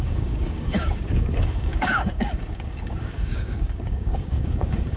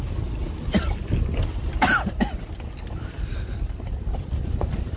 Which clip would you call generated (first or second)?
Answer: first